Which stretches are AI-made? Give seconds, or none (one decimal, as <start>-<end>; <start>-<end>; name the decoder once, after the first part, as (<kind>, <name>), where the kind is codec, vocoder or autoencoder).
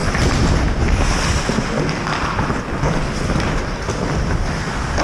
none